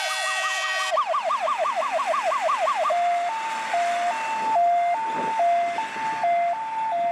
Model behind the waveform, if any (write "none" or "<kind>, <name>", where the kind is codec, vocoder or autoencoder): none